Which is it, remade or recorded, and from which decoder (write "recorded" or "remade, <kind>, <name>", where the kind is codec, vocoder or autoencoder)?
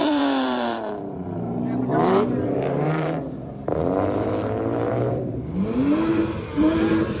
remade, vocoder, BigVGAN v2